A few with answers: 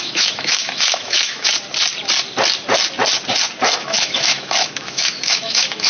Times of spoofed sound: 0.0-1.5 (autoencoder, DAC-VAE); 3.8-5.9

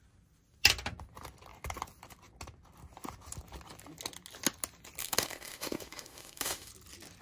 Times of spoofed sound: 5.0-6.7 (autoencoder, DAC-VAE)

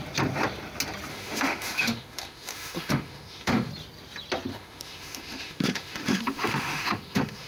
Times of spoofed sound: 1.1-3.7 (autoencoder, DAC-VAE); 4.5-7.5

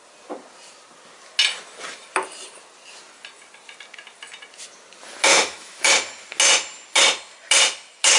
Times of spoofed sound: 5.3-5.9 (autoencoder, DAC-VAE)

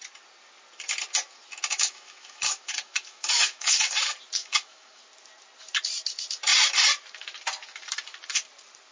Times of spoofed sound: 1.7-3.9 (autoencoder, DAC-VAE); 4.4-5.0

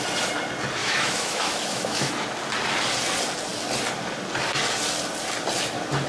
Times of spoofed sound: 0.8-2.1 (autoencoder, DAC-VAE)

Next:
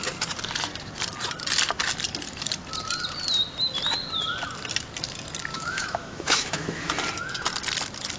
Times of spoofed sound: 5.5-6.9 (autoencoder, DAC-VAE)